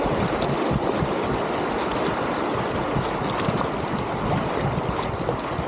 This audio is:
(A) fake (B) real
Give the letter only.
B